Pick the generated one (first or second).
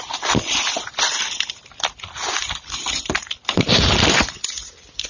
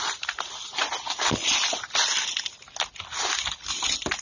first